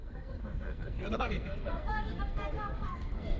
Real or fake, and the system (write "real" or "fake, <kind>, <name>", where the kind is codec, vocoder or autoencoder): fake, codec, SNAC